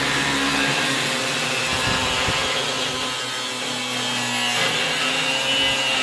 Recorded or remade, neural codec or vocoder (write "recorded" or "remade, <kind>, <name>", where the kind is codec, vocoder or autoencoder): recorded